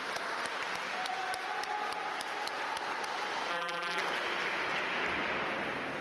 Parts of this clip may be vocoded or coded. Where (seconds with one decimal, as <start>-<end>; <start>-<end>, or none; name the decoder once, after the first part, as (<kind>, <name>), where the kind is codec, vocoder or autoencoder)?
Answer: 3.5-4.0 (vocoder, BigVGAN v2)